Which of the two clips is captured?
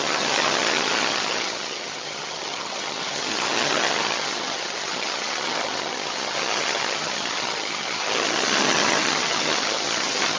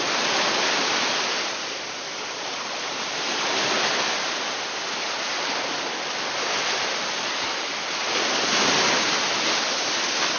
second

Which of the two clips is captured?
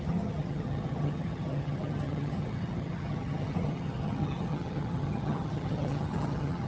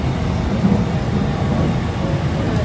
second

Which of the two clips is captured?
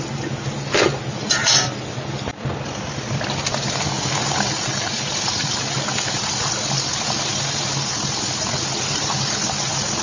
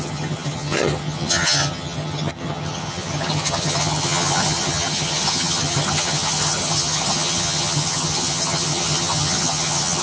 first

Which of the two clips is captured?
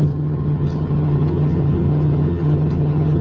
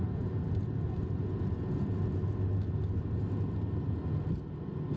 second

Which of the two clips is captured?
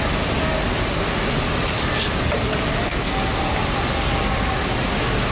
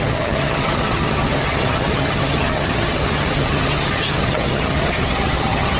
first